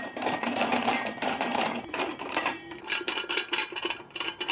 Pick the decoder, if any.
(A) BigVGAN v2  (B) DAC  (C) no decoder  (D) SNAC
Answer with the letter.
A